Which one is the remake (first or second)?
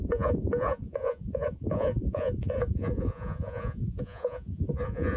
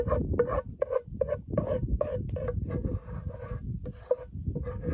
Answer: first